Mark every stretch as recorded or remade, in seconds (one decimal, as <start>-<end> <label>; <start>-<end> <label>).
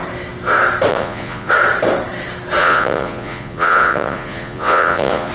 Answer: 0.0-0.9 recorded; 0.9-1.5 remade; 1.5-2.6 recorded; 2.6-5.3 remade